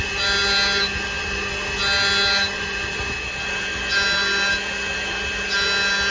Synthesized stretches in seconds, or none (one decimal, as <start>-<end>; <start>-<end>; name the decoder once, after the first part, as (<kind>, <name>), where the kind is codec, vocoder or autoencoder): none